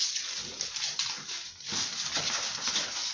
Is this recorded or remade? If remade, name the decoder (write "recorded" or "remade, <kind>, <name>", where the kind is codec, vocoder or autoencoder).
recorded